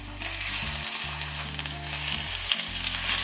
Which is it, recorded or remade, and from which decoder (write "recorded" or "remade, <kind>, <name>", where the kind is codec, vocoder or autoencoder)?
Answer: recorded